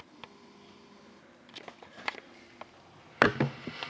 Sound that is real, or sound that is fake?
real